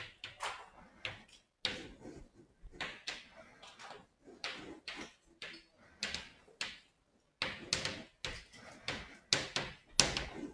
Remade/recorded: recorded